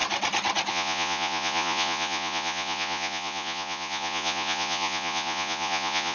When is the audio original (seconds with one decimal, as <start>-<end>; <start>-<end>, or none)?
0.0-0.7